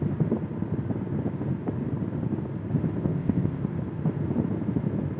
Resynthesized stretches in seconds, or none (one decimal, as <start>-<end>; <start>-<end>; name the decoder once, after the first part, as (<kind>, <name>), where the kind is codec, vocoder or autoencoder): 3.0-3.6 (codec, ZipCodec)